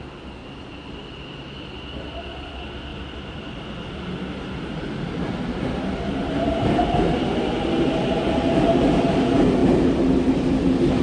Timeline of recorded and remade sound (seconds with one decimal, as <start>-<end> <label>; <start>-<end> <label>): 0.0-0.4 recorded; 0.4-1.0 remade; 1.0-2.9 recorded; 2.9-3.4 remade; 3.4-6.2 recorded; 6.2-7.3 remade; 7.3-11.0 recorded